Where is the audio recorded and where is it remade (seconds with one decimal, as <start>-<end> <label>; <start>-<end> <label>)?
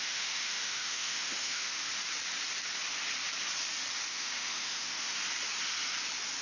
0.0-1.9 remade; 1.9-4.1 recorded; 4.1-5.2 remade; 5.2-6.4 recorded